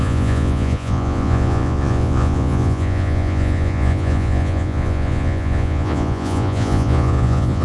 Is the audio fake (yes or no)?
yes